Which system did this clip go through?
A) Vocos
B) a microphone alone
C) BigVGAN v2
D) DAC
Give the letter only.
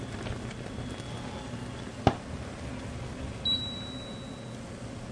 B